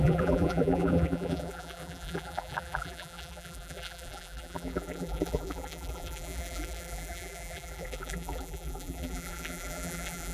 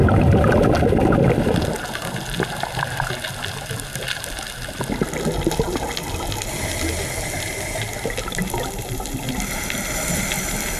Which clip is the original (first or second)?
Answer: second